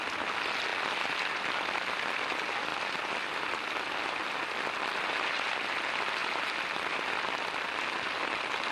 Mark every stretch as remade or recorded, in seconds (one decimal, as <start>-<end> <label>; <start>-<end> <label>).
0.0-2.7 recorded; 2.7-4.3 remade; 4.3-6.2 recorded; 6.2-6.7 remade; 6.7-8.7 recorded